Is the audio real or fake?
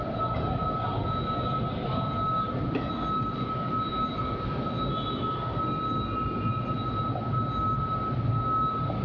real